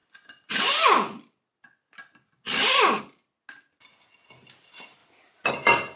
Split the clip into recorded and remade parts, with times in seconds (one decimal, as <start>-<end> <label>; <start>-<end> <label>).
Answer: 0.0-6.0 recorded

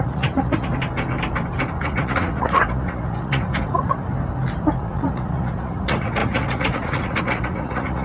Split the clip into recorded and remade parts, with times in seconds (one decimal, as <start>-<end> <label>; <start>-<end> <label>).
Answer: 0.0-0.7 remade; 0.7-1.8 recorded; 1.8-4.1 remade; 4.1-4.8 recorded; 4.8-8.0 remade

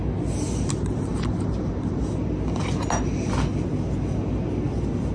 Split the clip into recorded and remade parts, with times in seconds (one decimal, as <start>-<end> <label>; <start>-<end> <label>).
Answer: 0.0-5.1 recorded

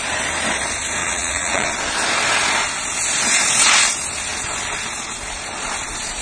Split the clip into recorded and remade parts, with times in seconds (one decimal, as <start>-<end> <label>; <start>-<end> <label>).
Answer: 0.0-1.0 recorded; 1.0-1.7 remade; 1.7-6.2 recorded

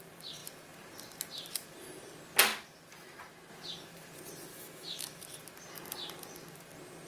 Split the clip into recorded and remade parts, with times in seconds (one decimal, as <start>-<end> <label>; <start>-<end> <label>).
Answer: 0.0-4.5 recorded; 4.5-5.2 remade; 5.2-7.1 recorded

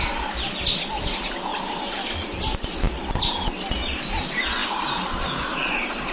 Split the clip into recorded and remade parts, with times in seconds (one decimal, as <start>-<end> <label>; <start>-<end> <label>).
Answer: 0.0-1.5 recorded; 1.5-2.1 remade; 2.1-4.6 recorded; 4.6-5.6 remade; 5.6-6.1 recorded